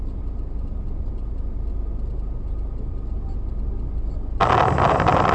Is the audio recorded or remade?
recorded